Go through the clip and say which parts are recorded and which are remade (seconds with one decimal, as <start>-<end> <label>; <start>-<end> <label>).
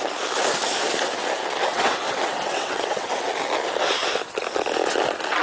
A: 0.0-1.7 recorded; 1.7-3.1 remade; 3.1-5.4 recorded